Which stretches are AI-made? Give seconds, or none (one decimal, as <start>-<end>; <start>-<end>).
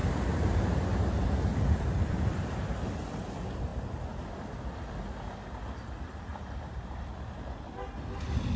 0.0-0.7; 1.5-2.6; 6.3-7.0